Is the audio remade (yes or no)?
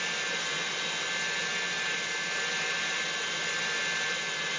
no